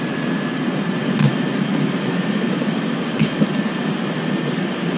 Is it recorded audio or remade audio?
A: recorded